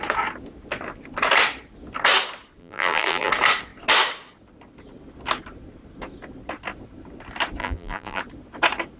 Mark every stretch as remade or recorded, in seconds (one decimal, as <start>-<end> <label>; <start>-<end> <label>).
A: 0.0-2.6 recorded; 2.6-3.3 remade; 3.3-7.6 recorded; 7.6-8.2 remade; 8.2-9.0 recorded

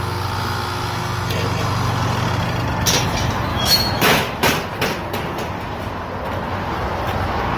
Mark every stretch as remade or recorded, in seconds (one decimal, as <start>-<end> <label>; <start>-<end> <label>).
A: 0.0-3.5 recorded; 3.5-4.4 remade; 4.4-7.6 recorded

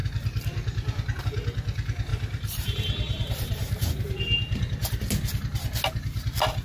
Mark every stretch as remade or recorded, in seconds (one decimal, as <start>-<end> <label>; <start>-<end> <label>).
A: 0.0-2.1 recorded; 2.1-3.9 remade; 3.9-6.6 recorded

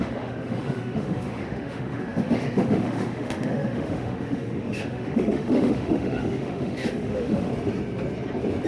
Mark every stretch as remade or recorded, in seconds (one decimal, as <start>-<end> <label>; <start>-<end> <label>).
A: 0.0-7.5 remade; 7.5-8.7 recorded

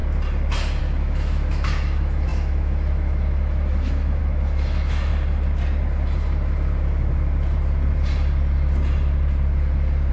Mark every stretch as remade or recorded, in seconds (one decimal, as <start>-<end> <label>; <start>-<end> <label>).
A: 0.0-0.8 recorded; 0.8-5.1 remade; 5.1-10.1 recorded